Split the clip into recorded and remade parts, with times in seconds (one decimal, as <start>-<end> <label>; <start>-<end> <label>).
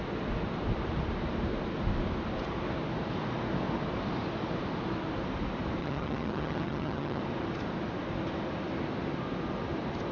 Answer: 0.0-5.8 recorded; 5.8-7.2 remade; 7.2-10.1 recorded